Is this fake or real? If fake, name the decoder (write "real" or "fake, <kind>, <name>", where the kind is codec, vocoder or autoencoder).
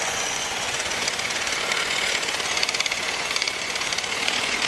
fake, vocoder, Vocos